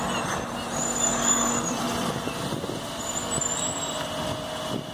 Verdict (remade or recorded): recorded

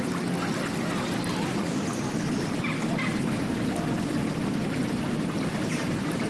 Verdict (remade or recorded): recorded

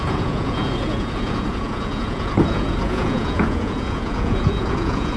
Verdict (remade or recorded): remade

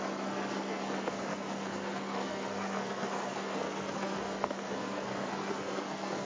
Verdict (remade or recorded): remade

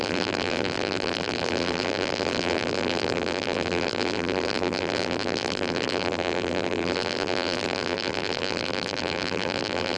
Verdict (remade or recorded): remade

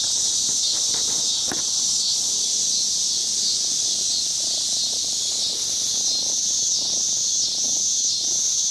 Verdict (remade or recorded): recorded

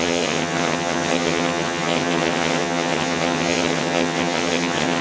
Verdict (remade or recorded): remade